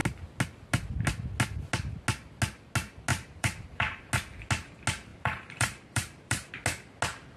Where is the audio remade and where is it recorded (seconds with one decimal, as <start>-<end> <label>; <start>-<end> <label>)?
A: 0.0-3.1 recorded; 3.1-4.0 remade; 4.0-5.1 recorded; 5.1-6.5 remade; 6.5-7.4 recorded